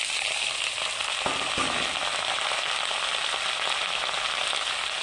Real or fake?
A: real